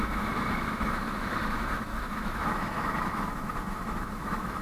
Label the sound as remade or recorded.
remade